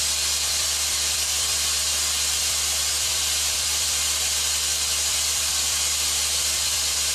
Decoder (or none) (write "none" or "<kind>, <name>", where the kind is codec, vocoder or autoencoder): vocoder, BigVGAN v2